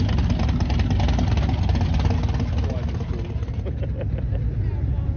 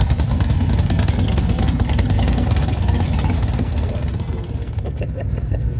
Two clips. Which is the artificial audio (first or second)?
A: second